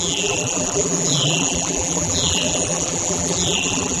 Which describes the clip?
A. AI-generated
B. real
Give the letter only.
A